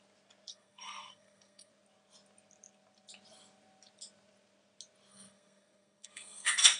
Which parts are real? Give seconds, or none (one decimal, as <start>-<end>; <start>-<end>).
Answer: 0.0-0.5; 1.7-5.1

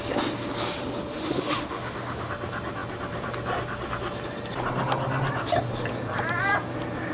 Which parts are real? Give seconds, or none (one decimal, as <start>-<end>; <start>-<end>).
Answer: 0.0-1.1; 2.3-7.1

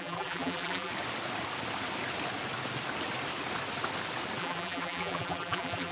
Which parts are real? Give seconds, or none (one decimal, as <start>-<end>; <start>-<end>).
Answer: 0.9-4.4

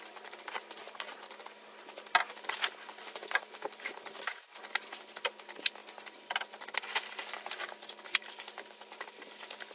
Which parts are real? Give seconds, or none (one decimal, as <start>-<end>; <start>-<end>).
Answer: 0.0-9.7